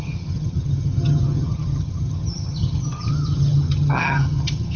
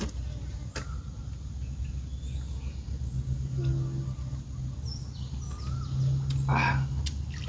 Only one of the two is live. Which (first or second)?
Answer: second